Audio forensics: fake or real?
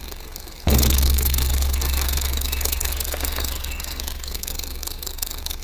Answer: fake